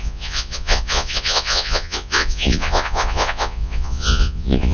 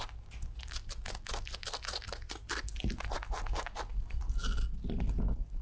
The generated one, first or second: first